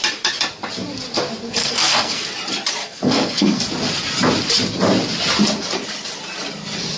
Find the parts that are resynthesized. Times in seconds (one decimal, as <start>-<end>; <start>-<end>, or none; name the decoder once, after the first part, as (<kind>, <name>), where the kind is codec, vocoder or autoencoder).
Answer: 1.6-2.3 (codec, SNAC); 2.8-3.6